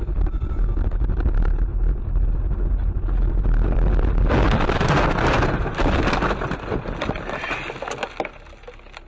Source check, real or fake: real